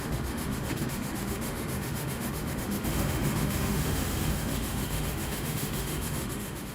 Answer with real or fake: fake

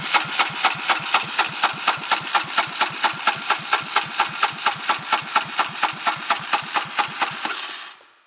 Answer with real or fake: real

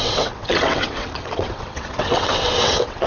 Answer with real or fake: fake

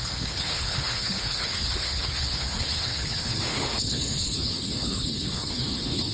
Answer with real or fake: fake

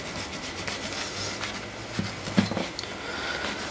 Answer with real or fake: real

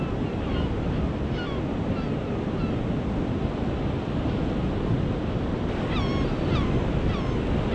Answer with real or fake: real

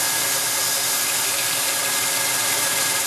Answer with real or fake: real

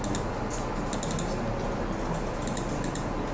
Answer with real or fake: real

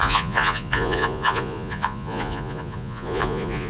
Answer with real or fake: fake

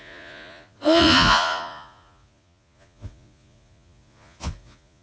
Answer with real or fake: fake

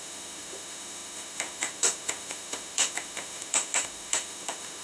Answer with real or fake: fake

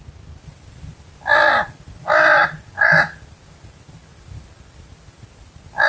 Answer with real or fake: real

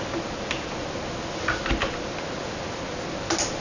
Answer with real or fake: real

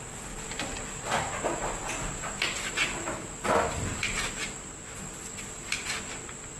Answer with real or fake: real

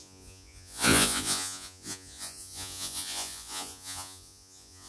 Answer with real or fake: fake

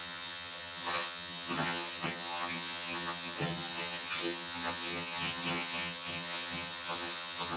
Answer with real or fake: fake